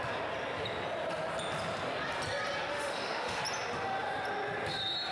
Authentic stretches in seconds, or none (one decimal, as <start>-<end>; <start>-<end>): 0.0-2.7; 3.4-5.1